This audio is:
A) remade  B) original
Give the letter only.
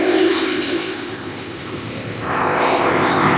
A